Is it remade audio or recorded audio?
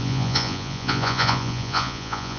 remade